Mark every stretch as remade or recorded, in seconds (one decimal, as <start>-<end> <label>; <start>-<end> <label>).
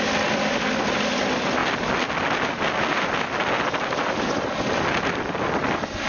0.0-6.1 recorded